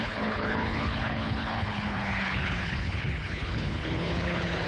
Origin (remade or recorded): remade